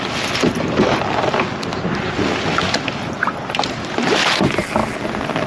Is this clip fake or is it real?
real